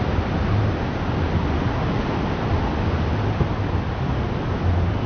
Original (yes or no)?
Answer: yes